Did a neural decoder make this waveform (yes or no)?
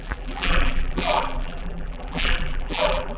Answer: yes